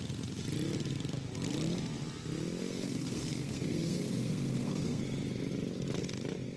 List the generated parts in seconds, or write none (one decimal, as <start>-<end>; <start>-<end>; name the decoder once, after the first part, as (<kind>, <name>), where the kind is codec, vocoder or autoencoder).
2.6-5.0 (codec, SNAC)